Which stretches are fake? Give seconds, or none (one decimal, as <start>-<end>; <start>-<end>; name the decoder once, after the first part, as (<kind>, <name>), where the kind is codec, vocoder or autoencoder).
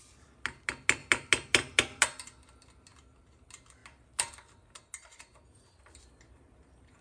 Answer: none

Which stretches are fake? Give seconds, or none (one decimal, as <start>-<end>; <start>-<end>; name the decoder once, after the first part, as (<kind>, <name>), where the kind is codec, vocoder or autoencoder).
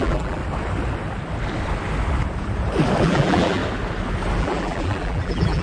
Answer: 0.0-0.4 (vocoder, BigVGAN v2); 3.0-3.6; 4.4-5.6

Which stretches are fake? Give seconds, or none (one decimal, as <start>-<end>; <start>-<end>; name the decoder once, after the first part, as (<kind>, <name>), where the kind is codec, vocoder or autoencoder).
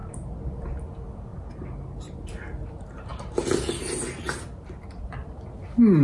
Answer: 0.0-0.8 (vocoder, BigVGAN v2); 1.3-2.7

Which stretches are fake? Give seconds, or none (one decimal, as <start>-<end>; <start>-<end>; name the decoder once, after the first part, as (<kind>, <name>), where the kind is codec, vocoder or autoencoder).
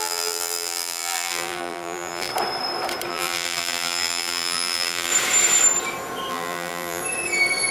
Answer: 0.0-2.3 (vocoder, BigVGAN v2); 3.1-5.1; 6.3-7.0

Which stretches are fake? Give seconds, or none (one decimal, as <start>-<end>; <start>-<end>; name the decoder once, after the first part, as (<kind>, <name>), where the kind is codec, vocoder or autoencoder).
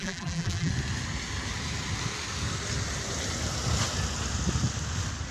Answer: 0.0-0.7 (vocoder, BigVGAN v2)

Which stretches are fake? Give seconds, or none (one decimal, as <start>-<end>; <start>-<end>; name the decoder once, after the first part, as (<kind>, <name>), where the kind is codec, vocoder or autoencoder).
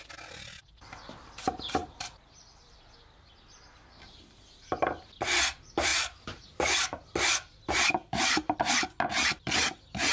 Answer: 1.8-2.8 (vocoder, BigVGAN v2); 8.0-8.8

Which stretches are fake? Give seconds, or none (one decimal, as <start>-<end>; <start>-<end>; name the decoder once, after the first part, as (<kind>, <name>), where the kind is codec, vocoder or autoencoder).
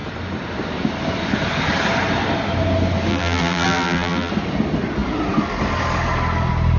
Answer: 3.1-4.3 (vocoder, BigVGAN v2)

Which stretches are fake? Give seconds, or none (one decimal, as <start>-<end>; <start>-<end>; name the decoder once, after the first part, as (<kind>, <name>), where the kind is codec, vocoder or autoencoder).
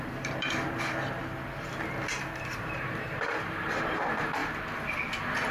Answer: 0.0-1.2 (vocoder, BigVGAN v2); 2.4-4.4